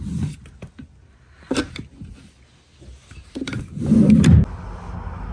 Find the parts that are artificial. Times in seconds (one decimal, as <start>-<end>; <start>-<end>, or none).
none